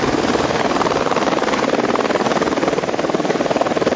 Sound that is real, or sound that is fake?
fake